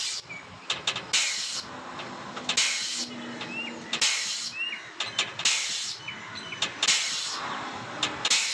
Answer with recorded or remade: recorded